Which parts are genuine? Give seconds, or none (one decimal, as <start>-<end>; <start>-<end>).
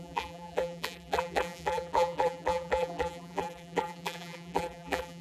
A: none